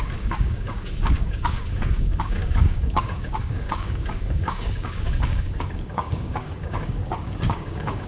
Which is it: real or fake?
fake